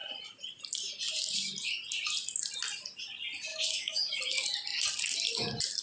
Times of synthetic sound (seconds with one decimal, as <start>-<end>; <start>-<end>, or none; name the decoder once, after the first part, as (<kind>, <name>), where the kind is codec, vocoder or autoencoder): 3.5-4.2 (autoencoder, DAC-VAE)